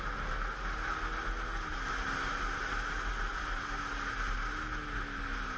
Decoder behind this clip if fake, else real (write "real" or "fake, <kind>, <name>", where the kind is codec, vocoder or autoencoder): real